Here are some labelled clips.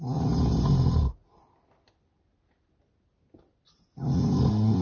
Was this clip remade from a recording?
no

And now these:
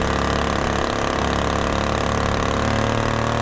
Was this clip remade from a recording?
no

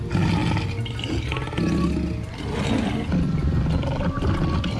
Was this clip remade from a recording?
no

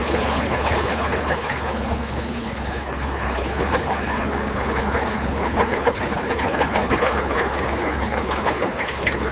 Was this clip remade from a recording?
yes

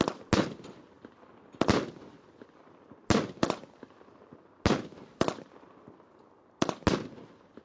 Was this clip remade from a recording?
no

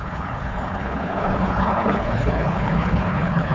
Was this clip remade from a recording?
yes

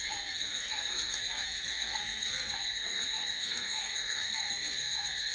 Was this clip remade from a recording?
yes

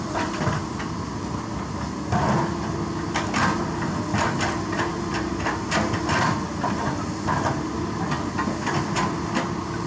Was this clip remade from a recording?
no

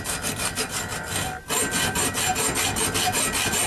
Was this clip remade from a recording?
no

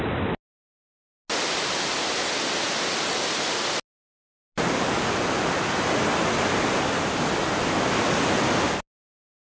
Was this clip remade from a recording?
no